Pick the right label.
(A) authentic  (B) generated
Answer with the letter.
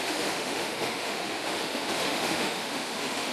B